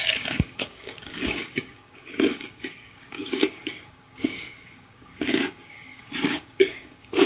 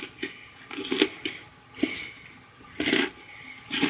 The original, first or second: second